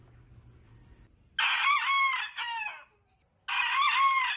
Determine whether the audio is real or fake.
real